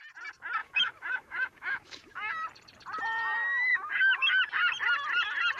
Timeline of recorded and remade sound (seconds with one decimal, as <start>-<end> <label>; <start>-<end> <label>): 0.0-0.6 recorded; 0.6-2.3 remade; 2.3-3.7 recorded; 3.7-4.3 remade; 4.3-5.6 recorded